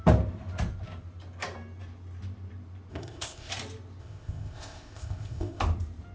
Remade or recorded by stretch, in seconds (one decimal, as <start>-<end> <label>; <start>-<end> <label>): 0.0-2.9 recorded; 2.9-3.5 remade; 3.5-4.0 recorded; 4.0-5.6 remade; 5.6-6.1 recorded